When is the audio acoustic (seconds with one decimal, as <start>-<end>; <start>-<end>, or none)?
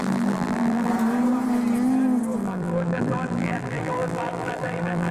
0.9-2.4